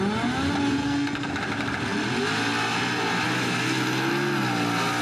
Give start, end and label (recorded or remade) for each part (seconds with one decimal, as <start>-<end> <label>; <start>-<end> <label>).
0.0-0.8 recorded; 0.8-1.3 remade; 1.3-5.0 recorded